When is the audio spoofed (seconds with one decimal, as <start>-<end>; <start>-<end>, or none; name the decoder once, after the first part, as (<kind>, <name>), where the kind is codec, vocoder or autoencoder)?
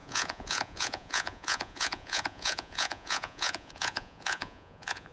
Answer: 0.0-5.1 (vocoder, Vocos)